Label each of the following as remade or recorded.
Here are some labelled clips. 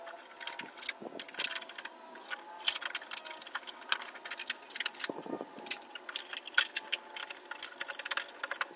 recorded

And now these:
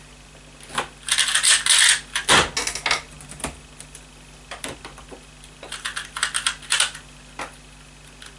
recorded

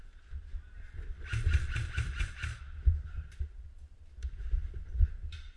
recorded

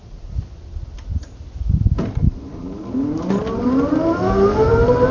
recorded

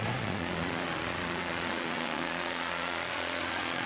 remade